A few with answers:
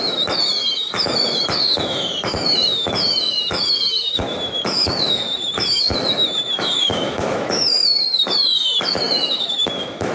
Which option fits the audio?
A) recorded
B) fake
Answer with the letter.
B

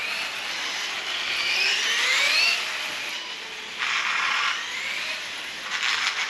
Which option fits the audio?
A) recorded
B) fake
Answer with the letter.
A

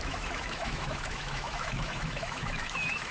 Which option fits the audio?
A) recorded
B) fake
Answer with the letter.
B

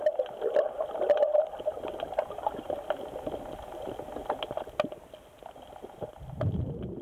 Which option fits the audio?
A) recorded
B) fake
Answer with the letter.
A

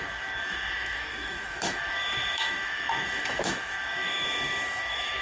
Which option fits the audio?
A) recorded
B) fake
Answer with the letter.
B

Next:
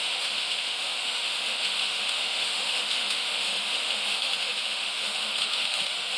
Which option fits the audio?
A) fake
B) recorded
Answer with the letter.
A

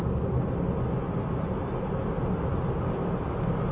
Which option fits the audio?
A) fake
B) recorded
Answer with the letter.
B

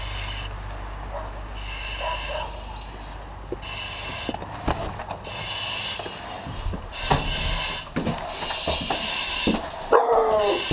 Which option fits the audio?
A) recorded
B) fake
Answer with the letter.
A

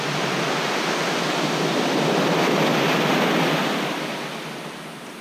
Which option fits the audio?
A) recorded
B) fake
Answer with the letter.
A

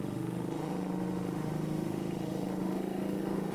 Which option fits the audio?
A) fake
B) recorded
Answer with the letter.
A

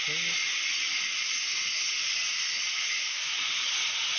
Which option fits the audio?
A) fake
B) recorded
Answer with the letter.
B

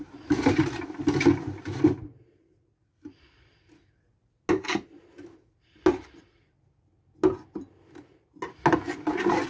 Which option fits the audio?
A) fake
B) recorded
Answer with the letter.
B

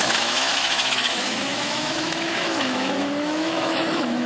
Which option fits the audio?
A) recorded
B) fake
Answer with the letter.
B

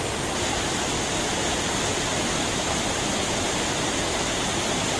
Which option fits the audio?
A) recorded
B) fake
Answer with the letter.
A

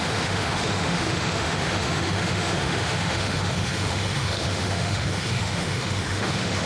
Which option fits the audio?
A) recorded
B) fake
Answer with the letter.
B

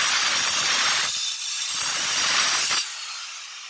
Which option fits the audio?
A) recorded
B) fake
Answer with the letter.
A